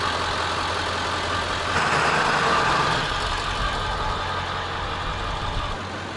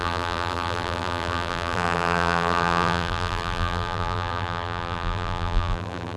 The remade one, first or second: second